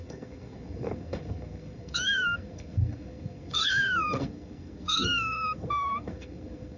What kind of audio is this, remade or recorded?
remade